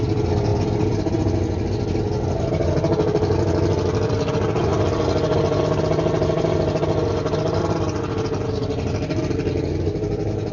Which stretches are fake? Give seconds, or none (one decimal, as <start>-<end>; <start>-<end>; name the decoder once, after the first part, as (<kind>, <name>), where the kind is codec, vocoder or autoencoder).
none